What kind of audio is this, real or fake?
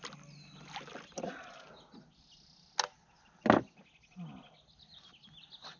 real